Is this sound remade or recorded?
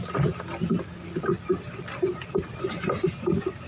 recorded